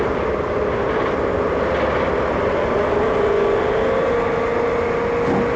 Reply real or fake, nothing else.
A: real